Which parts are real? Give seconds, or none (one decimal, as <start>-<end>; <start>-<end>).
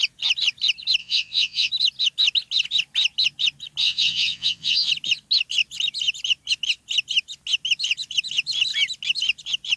0.0-1.0; 1.7-3.8; 4.9-9.8